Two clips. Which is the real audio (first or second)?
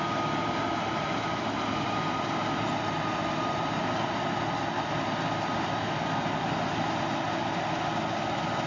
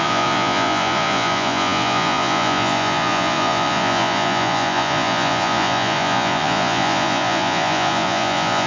first